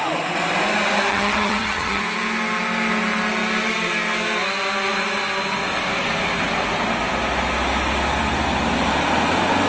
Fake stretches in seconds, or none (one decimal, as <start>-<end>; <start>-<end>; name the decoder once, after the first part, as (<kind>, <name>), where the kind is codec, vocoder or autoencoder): 1.1-2.0 (vocoder, HiFi-GAN)